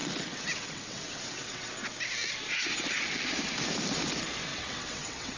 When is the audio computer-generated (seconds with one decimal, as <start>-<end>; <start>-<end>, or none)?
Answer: 0.0-1.7; 4.5-5.4